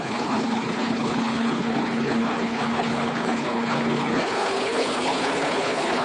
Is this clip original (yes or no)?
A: no